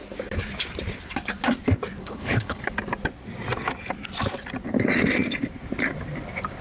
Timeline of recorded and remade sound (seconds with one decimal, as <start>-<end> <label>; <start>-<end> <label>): 0.0-2.0 recorded; 2.0-2.6 remade; 2.6-6.6 recorded